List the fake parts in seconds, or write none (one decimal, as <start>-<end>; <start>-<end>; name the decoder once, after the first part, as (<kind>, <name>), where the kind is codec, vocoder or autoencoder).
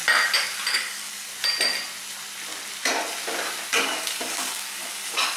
0.7-1.3 (codec, DAC); 3.7-5.4